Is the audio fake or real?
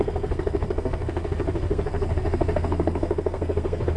fake